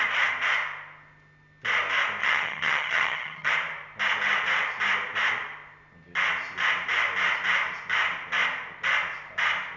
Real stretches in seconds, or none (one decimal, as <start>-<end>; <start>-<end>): 0.0-2.2; 3.5-9.8